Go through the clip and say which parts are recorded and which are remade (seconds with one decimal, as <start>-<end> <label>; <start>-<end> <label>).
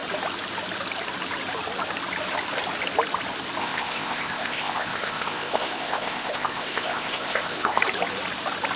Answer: 0.0-3.6 recorded; 3.6-7.8 remade; 7.8-8.8 recorded